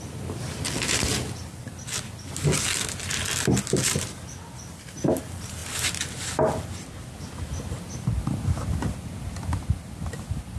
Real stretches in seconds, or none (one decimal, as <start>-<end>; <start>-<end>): 0.0-10.6